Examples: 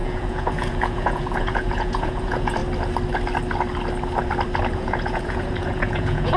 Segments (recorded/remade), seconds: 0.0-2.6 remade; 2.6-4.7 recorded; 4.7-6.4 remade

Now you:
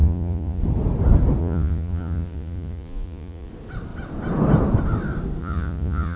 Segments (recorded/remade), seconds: 0.0-0.6 remade; 0.6-1.4 recorded; 1.4-3.5 remade; 3.5-5.4 recorded; 5.4-6.2 remade

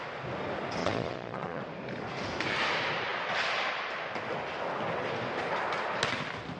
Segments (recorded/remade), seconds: 0.0-0.8 recorded; 0.8-1.6 remade; 1.6-6.6 recorded

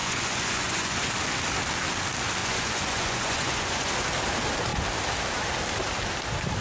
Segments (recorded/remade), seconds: 0.0-1.1 remade; 1.1-2.4 recorded; 2.4-3.9 remade; 3.9-6.6 recorded

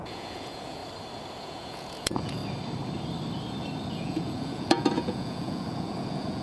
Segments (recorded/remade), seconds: 0.0-0.8 remade; 0.8-1.4 recorded; 1.4-2.4 remade; 2.4-3.9 recorded; 3.9-6.4 remade

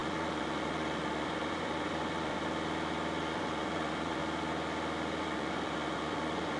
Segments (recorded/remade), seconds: 0.0-2.4 remade; 2.4-3.2 recorded; 3.2-4.2 remade; 4.2-5.2 recorded; 5.2-6.6 remade